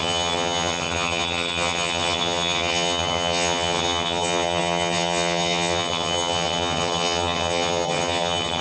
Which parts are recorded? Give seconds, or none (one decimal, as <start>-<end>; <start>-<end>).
none